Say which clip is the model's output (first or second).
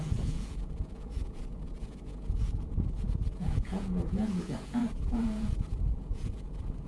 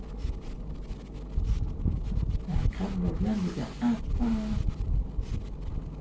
first